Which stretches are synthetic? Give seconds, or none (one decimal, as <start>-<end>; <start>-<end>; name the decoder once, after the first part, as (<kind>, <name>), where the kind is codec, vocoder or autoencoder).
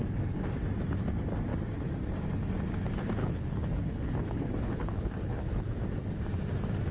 3.2-5.8 (codec, HILCodec)